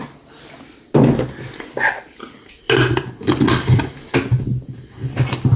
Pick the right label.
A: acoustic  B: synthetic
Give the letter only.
A